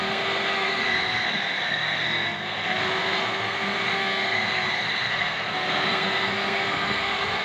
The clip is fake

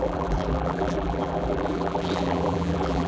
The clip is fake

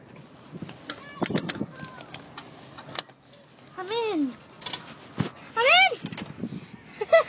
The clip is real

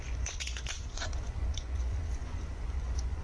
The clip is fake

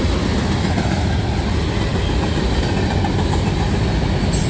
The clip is real